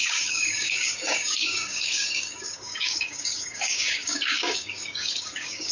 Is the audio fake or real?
fake